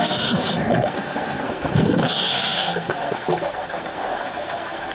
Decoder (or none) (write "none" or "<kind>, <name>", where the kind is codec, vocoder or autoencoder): codec, SNAC